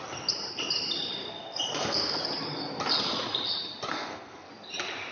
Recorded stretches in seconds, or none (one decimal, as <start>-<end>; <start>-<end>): 0.0-1.7; 2.2-3.9; 4.5-5.1